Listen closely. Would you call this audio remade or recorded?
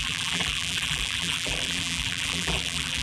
remade